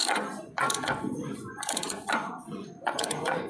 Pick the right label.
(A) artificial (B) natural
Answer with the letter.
A